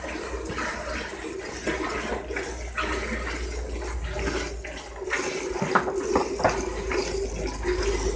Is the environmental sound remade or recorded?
recorded